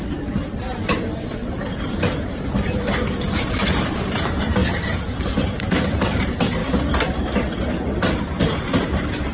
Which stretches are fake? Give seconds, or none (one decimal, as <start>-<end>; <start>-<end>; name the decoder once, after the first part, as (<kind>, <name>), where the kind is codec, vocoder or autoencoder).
0.0-6.6 (vocoder, BigVGAN v2); 8.1-9.3

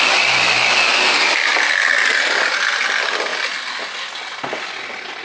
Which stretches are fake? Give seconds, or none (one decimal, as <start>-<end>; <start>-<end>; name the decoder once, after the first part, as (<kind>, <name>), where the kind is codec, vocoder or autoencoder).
none

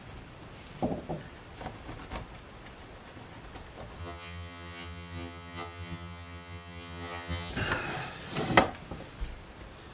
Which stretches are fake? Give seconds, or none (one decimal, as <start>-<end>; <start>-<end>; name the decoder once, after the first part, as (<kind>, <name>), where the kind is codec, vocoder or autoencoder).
4.0-7.5 (vocoder, HiFi-GAN)

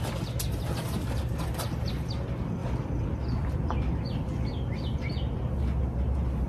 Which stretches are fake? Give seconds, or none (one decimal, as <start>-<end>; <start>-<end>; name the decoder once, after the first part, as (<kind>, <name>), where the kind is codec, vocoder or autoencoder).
none

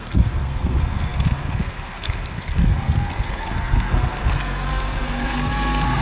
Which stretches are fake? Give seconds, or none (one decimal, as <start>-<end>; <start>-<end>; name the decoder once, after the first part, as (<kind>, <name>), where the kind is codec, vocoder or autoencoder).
0.0-6.0 (codec, SNAC)